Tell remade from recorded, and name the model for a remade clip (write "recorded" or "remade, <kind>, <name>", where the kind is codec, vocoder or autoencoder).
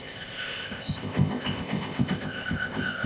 remade, codec, ZipCodec